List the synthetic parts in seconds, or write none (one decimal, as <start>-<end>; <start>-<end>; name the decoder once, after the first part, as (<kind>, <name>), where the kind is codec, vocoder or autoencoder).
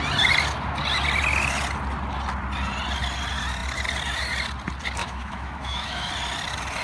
5.0-6.1 (autoencoder, DAC-VAE)